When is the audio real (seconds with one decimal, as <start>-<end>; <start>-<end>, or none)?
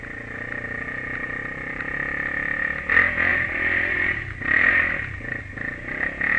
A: 0.0-1.4; 1.9-3.3; 5.4-6.4